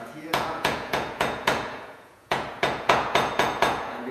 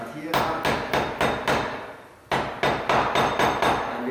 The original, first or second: second